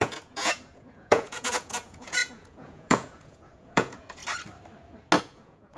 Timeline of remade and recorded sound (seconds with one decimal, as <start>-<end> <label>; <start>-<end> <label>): 0.0-4.2 remade; 4.2-5.2 recorded; 5.2-5.8 remade